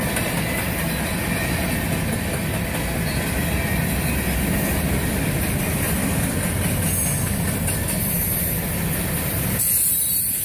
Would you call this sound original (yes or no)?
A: yes